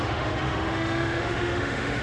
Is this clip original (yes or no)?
no